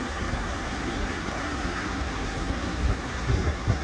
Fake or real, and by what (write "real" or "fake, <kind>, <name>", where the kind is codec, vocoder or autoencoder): fake, codec, SNAC